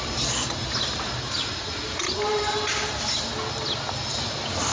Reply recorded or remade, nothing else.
recorded